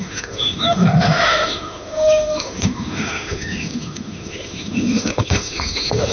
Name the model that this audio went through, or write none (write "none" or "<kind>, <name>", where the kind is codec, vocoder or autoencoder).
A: autoencoder, DAC-VAE